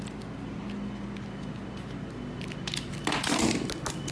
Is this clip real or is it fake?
real